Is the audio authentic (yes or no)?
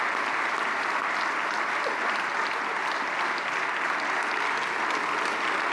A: yes